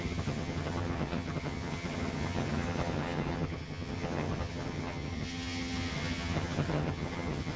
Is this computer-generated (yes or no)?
yes